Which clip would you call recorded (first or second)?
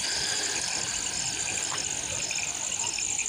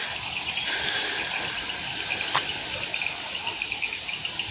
second